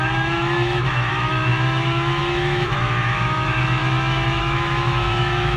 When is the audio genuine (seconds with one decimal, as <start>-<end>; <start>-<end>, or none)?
none